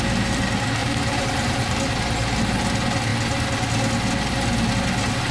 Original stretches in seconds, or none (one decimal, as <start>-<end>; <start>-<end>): 0.0-0.8; 1.8-5.3